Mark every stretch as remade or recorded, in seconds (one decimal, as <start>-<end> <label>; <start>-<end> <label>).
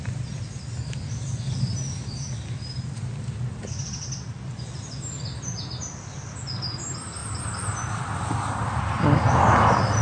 0.0-10.0 recorded